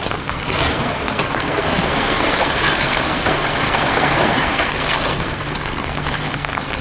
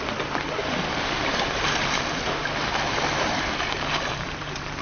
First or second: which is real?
second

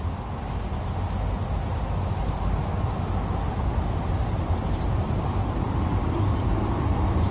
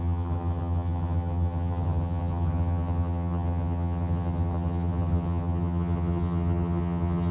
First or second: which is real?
first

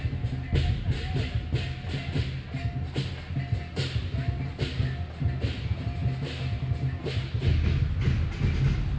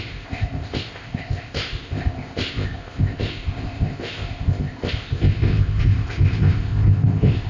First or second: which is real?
first